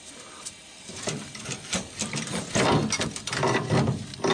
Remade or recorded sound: recorded